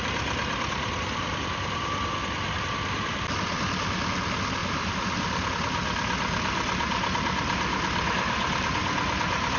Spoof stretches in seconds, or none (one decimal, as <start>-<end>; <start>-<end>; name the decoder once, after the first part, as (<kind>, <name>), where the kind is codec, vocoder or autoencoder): none